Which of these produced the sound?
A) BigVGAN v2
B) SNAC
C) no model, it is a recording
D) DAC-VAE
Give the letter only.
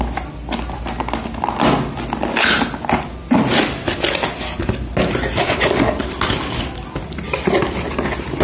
C